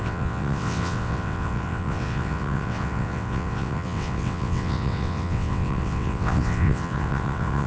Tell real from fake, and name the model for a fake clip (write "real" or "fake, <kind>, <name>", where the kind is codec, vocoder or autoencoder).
fake, vocoder, WaveNeXt